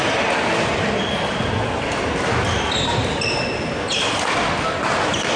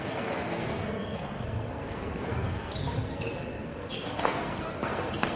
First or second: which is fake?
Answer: second